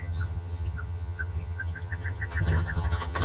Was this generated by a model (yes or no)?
yes